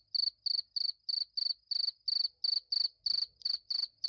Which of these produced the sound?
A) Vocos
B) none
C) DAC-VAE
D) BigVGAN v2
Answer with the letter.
B